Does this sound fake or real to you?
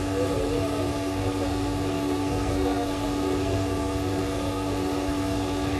fake